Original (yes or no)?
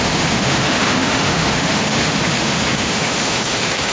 no